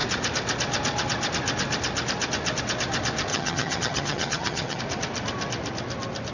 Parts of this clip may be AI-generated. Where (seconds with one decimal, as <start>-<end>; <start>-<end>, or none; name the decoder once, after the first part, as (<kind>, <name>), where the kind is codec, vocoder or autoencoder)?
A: 3.3-4.8 (vocoder, HiFi-GAN)